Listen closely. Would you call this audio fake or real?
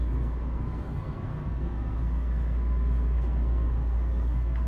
fake